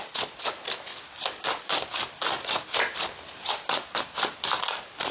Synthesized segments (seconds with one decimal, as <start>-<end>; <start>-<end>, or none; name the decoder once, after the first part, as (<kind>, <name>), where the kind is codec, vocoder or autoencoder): 0.9-4.0 (vocoder, BigVGAN v2)